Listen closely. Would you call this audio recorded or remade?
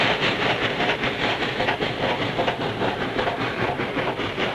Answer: remade